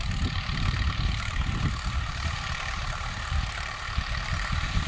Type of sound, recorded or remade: remade